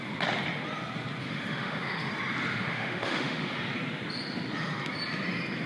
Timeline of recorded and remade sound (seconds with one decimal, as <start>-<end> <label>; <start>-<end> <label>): 0.0-1.2 recorded; 1.2-2.1 remade; 2.1-2.5 recorded; 2.5-3.6 remade; 3.6-5.7 recorded